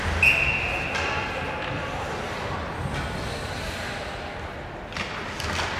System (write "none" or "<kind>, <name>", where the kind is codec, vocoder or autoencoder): none